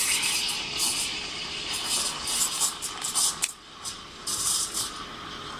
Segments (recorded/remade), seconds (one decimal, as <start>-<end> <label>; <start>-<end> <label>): 0.0-0.9 recorded; 0.9-1.7 remade; 1.7-4.2 recorded; 4.2-4.8 remade; 4.8-5.6 recorded